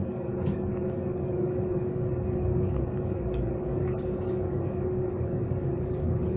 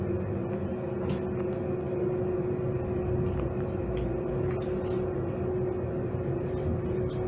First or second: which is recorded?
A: second